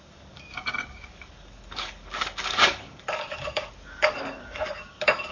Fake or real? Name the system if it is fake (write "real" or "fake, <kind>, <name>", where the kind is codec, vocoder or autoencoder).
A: fake, codec, DAC